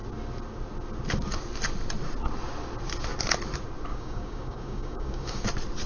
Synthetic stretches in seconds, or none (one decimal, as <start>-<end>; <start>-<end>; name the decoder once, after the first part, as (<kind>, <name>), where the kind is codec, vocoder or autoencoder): 3.9-5.4 (codec, DAC)